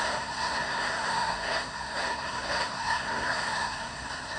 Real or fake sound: fake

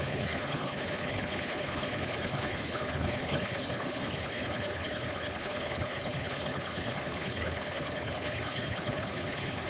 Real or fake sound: fake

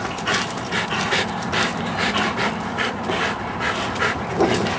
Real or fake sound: real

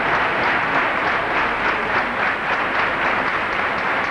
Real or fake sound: real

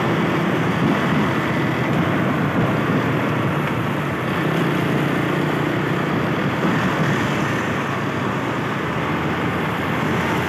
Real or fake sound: real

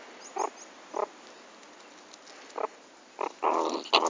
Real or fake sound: real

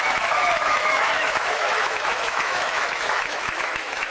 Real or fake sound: fake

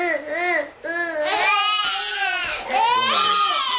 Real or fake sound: real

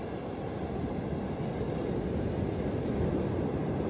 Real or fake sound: real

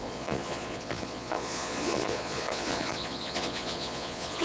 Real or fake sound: fake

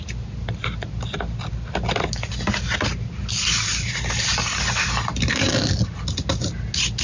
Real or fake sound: real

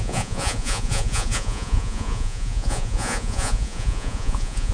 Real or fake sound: fake